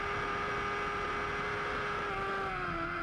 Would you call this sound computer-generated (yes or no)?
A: no